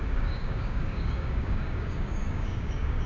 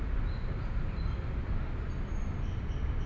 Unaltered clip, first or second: second